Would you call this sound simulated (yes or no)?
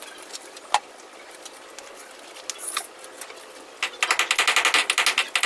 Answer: no